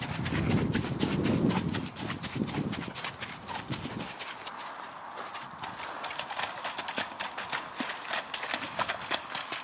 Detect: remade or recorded recorded